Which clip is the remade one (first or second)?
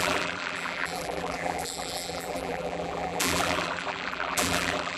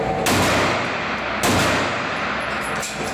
first